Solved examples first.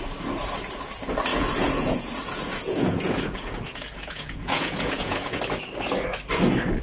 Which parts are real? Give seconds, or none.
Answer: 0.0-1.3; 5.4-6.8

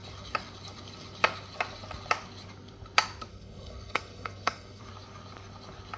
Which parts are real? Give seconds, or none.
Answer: 0.0-3.3; 4.8-6.0

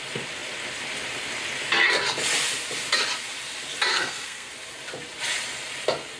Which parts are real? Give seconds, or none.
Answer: 0.0-3.9; 4.5-6.2

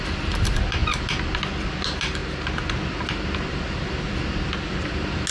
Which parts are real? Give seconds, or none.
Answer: 0.0-5.3